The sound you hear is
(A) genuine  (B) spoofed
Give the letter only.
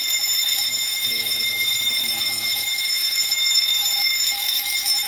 B